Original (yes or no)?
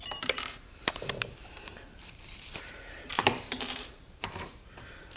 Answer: no